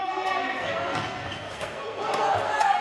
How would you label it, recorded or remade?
remade